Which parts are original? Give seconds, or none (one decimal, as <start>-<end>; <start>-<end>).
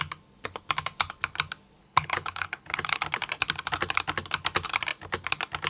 0.0-1.8; 3.0-5.7